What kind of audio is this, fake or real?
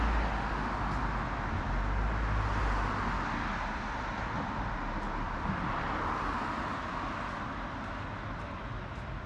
real